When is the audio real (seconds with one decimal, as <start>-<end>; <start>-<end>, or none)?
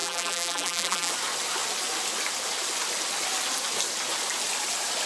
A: 1.1-5.1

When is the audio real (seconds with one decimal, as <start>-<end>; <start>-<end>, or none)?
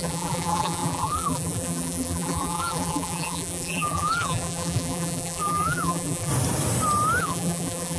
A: 6.3-7.2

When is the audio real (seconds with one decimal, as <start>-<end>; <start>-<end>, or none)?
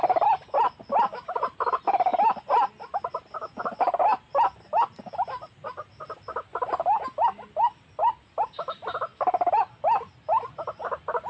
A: 0.0-9.1; 9.6-11.3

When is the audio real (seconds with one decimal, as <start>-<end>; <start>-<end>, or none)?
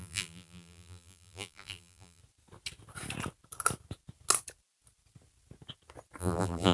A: 2.2-6.2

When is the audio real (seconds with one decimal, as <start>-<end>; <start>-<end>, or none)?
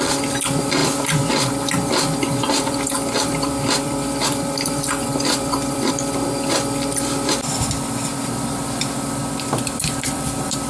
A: 9.2-9.8